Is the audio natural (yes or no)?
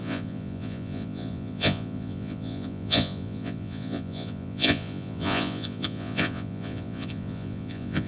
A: no